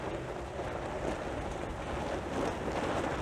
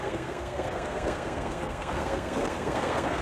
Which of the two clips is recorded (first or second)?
first